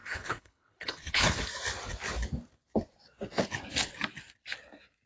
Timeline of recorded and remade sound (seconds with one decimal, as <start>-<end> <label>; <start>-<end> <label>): 0.0-1.4 remade; 1.4-5.1 recorded